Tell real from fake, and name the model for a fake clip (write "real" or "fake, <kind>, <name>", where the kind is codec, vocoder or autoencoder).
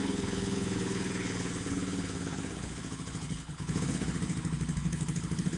fake, codec, HILCodec